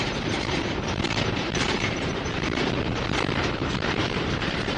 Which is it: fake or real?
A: fake